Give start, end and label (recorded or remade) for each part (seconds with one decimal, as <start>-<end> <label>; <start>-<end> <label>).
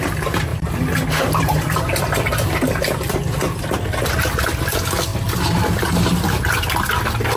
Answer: 0.0-0.5 recorded; 0.5-2.0 remade; 2.0-7.4 recorded